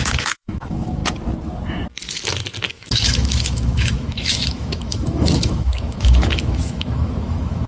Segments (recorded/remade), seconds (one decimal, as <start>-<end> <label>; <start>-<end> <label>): 0.0-1.0 remade; 1.0-2.7 recorded; 2.7-7.7 remade